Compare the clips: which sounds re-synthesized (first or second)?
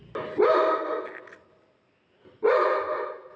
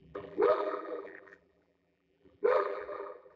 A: second